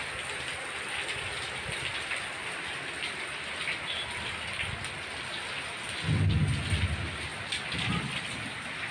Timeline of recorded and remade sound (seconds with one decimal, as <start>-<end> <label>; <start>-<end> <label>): 0.0-8.9 recorded